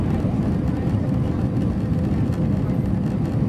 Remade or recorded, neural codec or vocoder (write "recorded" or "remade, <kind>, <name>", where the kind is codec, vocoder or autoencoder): recorded